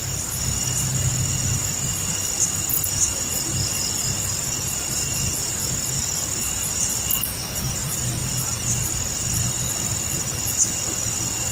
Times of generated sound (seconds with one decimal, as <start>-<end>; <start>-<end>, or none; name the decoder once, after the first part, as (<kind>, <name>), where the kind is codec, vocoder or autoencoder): none